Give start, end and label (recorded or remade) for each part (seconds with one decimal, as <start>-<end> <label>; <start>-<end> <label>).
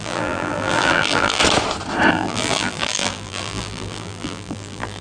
0.0-1.4 remade; 1.4-2.1 recorded; 2.1-5.0 remade